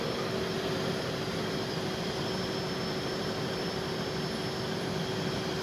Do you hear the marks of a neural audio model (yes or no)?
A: no